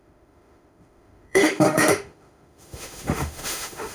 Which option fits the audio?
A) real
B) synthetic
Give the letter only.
B